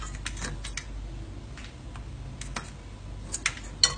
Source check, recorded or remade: recorded